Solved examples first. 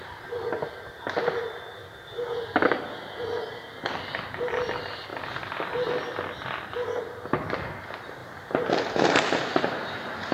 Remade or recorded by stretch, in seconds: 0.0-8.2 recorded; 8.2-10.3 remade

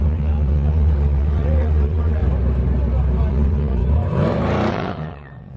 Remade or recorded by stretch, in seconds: 0.0-2.2 remade; 2.2-3.3 recorded; 3.3-3.8 remade; 3.8-4.7 recorded; 4.7-5.6 remade

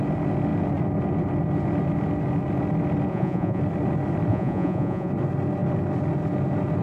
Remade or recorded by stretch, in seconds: 0.0-3.1 recorded; 3.1-3.6 remade; 3.6-4.3 recorded; 4.3-5.1 remade; 5.1-6.8 recorded

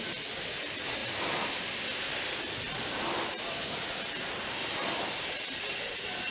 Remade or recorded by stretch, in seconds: 0.0-6.3 recorded